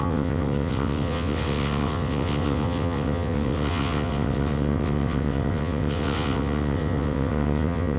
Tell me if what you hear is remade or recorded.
remade